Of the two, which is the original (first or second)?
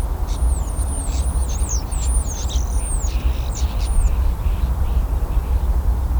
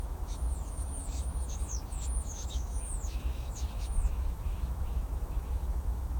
first